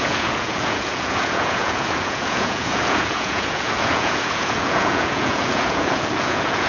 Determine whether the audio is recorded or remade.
remade